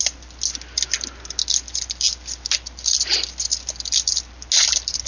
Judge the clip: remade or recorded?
recorded